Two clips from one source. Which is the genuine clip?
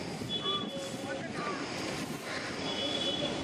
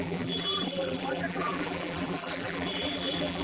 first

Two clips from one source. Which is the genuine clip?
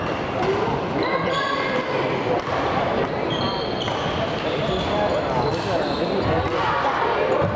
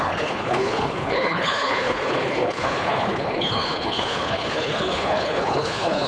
first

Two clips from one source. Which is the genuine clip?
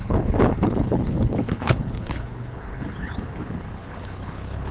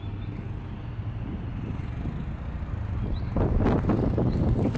second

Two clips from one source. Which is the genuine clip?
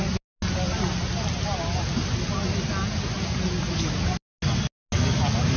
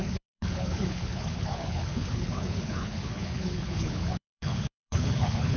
first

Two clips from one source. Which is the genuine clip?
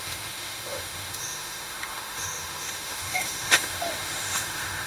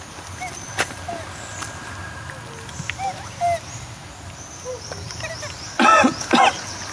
second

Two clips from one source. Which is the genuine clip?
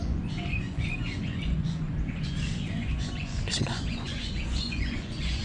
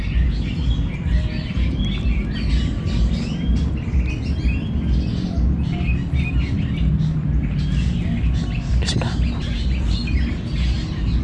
second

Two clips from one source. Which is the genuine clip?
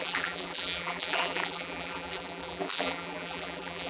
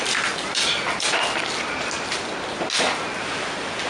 second